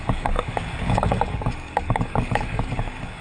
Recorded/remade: remade